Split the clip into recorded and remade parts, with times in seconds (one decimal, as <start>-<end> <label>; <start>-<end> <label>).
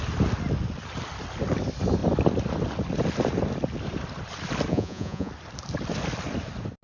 0.0-4.7 recorded; 4.7-5.3 remade; 5.3-6.8 recorded